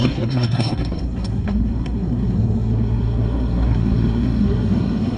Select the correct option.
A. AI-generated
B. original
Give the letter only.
A